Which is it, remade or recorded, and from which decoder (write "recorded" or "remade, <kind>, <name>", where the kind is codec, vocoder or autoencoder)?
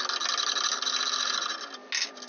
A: recorded